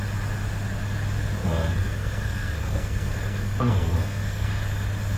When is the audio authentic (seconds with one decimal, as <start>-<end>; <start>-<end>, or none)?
0.0-1.4; 4.5-5.2